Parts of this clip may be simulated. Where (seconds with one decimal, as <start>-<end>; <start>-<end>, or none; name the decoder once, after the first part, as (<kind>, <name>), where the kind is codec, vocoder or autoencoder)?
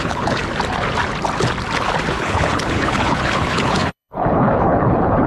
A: 0.0-0.4 (codec, HILCodec); 2.1-5.3